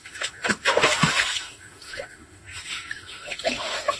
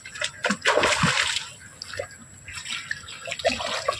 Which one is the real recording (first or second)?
second